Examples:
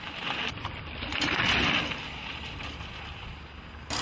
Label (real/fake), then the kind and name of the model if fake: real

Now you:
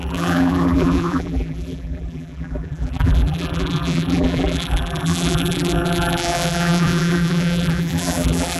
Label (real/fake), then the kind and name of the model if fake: fake, vocoder, BigVGAN v2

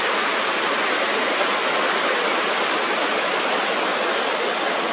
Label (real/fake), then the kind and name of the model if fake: real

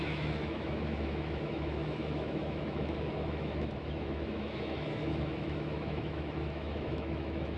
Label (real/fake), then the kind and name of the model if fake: fake, autoencoder, DAC-VAE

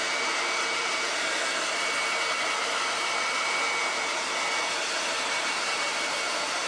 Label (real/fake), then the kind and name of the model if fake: real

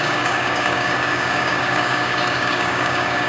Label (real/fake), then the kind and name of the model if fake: fake, codec, DAC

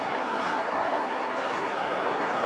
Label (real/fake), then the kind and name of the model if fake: fake, codec, SNAC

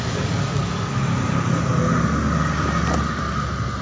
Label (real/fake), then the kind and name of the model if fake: real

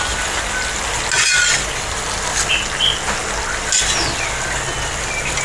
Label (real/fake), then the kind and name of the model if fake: real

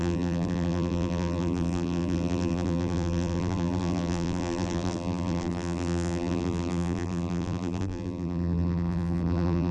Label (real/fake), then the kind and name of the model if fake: fake, vocoder, BigVGAN v2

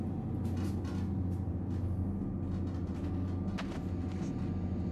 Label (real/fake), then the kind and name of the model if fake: real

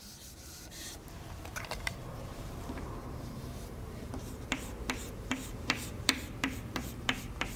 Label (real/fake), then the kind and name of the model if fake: fake, vocoder, BigVGAN v2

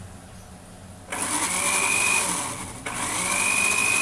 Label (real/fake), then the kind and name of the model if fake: real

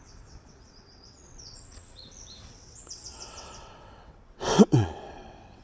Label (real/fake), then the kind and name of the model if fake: fake, vocoder, WaveNeXt